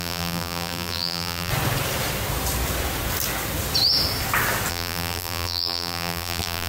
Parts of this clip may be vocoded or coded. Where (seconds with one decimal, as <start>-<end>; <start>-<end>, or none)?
0.0-1.5; 4.7-6.7